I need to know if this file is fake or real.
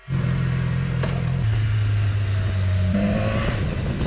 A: real